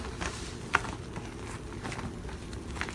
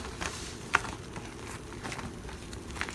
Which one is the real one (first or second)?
first